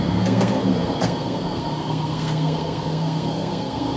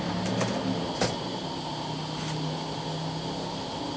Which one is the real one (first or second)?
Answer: second